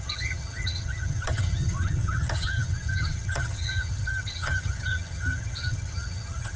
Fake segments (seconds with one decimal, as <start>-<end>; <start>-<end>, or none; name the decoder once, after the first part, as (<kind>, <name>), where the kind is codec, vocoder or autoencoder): 0.0-6.6 (vocoder, HiFi-GAN)